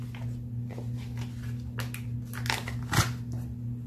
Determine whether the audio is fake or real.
real